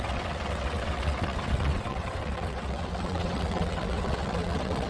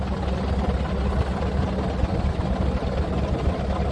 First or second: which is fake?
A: first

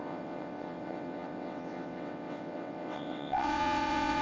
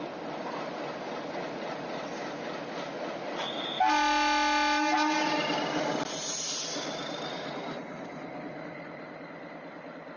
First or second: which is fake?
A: first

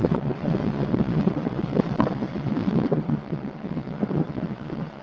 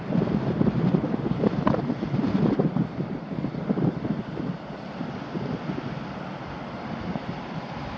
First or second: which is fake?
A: first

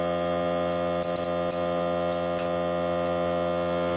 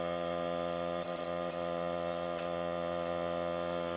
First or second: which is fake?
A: second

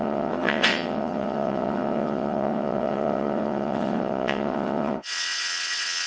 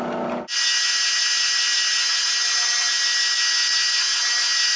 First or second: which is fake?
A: first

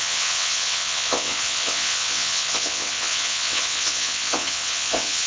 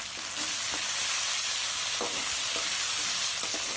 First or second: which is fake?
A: first